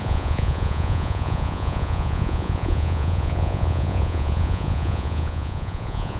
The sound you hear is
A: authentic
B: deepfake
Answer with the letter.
B